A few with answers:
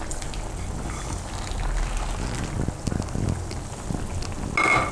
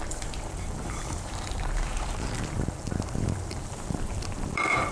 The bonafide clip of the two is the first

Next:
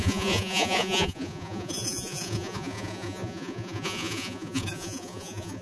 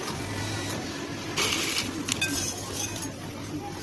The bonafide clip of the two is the second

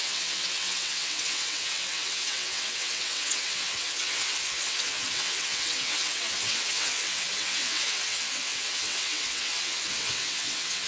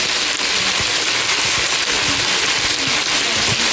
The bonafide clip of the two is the second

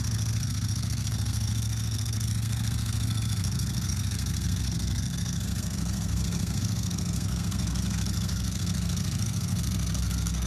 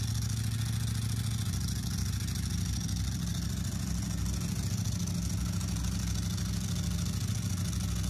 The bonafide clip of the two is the second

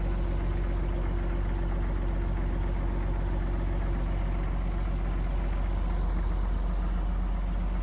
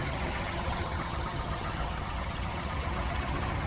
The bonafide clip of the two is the first